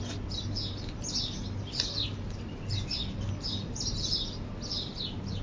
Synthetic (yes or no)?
no